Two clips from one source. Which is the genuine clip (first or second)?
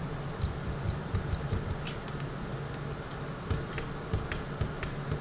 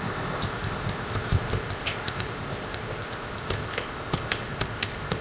first